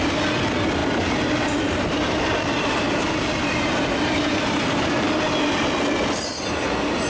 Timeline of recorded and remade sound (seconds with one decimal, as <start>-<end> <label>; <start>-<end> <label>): 0.0-0.8 recorded; 0.8-5.1 remade; 5.1-7.1 recorded